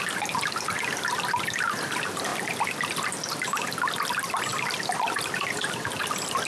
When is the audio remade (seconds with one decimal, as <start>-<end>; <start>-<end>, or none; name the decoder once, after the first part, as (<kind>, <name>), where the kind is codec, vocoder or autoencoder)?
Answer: none